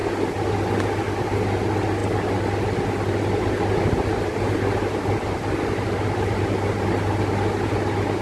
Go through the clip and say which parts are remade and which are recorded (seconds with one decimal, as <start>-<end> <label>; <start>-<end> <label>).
0.0-8.2 recorded